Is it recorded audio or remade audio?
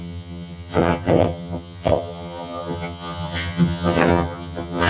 remade